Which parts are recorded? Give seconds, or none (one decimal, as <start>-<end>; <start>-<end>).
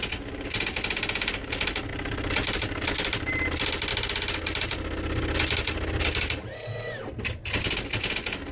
0.0-8.5